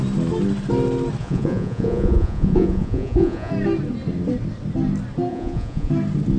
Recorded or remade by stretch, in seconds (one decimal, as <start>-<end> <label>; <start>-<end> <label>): 0.0-1.2 recorded; 1.2-3.5 remade; 3.5-5.3 recorded; 5.3-5.9 remade; 5.9-6.4 recorded